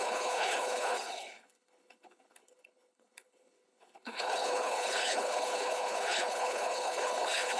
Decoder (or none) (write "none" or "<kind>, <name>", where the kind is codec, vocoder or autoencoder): codec, HILCodec